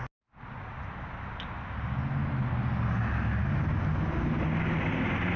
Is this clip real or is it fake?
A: real